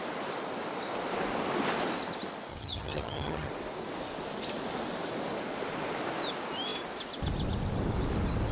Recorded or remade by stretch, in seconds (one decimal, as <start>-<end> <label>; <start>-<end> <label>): 0.0-2.5 recorded; 2.5-3.5 remade; 3.5-8.5 recorded